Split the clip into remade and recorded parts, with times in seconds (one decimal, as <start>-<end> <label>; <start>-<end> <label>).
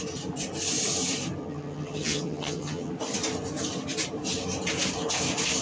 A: 0.0-1.4 recorded; 1.4-2.9 remade; 2.9-5.6 recorded